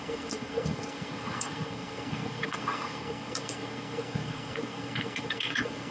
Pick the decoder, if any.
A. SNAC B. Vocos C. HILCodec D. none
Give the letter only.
A